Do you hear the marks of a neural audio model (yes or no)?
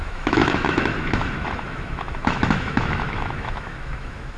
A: yes